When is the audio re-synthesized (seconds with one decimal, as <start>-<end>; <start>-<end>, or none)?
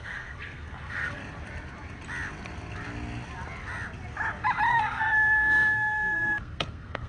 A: 0.0-1.2; 4.7-7.1